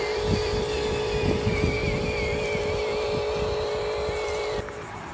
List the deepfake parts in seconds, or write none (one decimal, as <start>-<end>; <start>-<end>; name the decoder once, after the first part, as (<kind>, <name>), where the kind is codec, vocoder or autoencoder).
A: none